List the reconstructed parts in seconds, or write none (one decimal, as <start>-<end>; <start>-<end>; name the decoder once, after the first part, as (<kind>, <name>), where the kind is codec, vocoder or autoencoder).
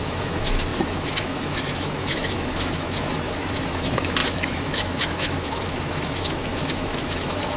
0.0-7.6 (autoencoder, DAC-VAE)